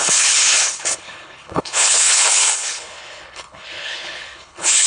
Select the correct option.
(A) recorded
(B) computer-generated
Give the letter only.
B